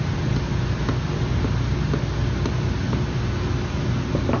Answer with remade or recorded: recorded